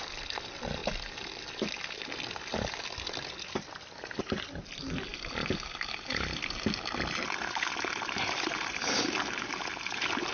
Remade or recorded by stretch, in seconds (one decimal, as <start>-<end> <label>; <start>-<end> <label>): 0.0-10.3 recorded